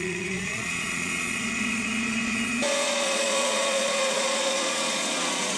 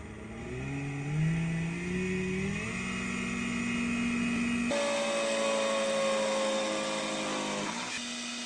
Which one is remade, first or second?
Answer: first